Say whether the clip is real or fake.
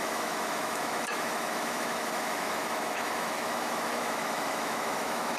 fake